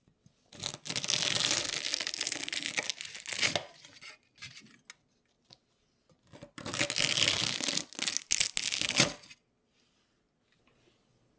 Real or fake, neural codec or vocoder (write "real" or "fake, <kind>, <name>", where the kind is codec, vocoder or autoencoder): real